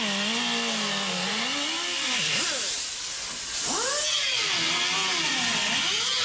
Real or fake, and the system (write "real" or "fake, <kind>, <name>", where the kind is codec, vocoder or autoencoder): real